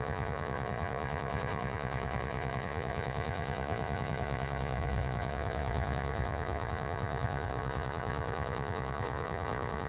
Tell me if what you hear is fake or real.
fake